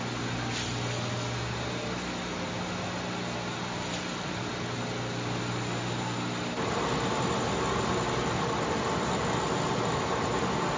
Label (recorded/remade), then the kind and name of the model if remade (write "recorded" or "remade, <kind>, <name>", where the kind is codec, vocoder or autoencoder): recorded